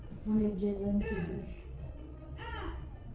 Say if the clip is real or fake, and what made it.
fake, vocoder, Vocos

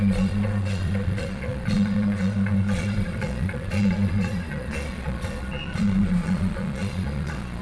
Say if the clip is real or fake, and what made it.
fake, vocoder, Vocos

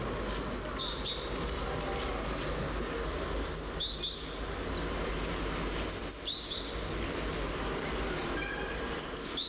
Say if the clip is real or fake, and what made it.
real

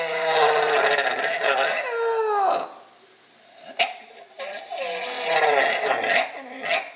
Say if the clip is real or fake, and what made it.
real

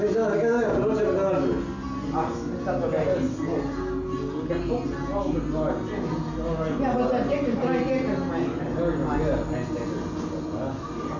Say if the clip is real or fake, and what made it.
real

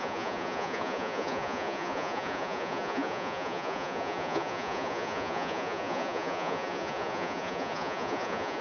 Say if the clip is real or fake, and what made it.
fake, vocoder, Vocos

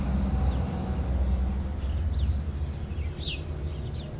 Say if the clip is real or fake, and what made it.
real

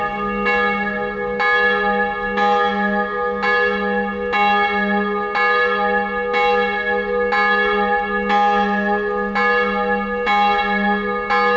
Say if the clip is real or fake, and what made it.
real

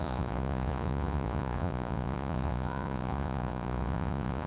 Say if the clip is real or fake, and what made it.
fake, vocoder, Vocos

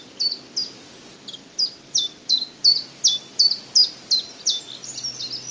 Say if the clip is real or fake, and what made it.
real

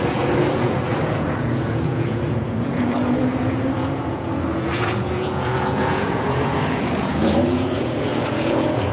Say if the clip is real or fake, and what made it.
fake, vocoder, Vocos